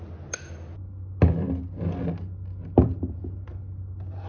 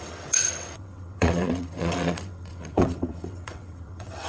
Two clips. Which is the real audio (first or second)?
first